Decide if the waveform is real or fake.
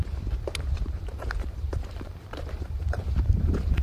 fake